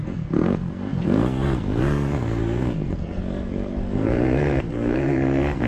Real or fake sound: fake